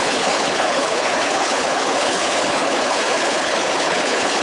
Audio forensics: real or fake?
fake